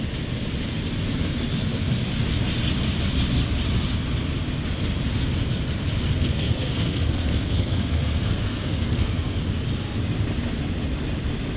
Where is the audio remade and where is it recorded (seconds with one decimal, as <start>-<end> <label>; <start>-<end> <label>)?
0.0-6.0 recorded; 6.0-9.4 remade; 9.4-11.6 recorded